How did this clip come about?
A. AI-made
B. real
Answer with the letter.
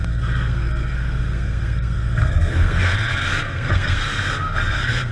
A